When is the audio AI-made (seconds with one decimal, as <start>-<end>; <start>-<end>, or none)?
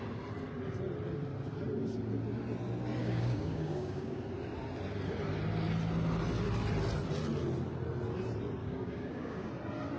3.0-4.2; 8.6-9.5